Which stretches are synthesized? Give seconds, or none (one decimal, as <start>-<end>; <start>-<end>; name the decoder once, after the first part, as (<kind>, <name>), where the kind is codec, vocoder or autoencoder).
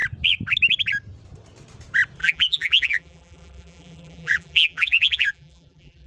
2.2-6.1 (vocoder, BigVGAN v2)